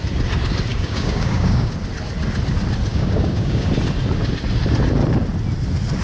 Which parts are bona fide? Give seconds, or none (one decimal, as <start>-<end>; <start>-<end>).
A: 0.0-0.7; 1.7-2.9; 3.7-6.0